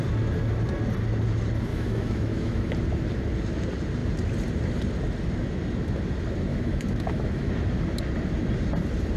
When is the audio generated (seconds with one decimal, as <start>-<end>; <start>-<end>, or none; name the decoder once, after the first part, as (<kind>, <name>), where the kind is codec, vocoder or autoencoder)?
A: 1.7-2.7 (autoencoder, DAC-VAE); 6.5-7.5